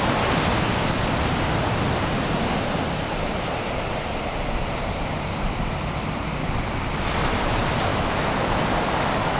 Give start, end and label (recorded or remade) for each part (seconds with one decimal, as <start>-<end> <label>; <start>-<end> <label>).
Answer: 0.0-7.9 recorded; 7.9-8.6 remade; 8.6-9.4 recorded